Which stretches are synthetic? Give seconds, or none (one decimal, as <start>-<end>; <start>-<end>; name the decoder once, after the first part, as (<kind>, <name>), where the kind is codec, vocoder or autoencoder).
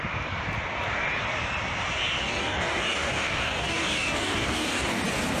2.2-5.0 (codec, DAC)